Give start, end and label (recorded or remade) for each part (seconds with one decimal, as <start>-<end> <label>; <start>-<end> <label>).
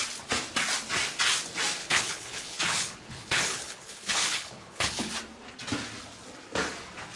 0.0-1.8 recorded; 1.8-5.1 remade; 5.1-7.2 recorded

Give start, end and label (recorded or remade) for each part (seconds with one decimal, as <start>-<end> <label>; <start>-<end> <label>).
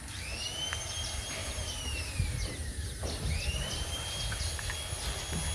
0.0-1.4 recorded; 1.4-4.6 remade; 4.6-5.5 recorded